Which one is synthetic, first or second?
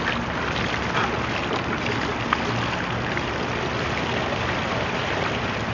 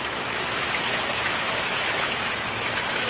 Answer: second